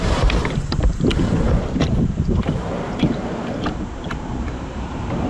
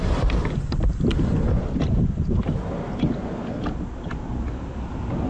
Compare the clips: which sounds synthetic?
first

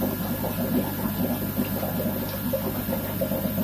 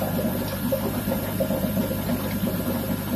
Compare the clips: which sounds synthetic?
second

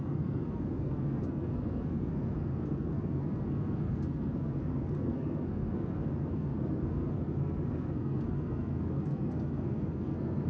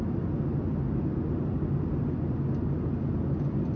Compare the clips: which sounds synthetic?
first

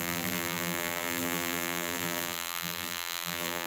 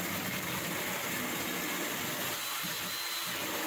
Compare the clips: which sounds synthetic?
first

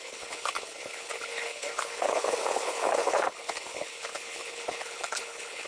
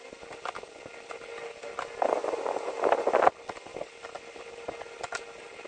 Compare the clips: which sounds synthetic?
first